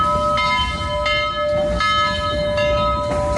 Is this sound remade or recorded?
recorded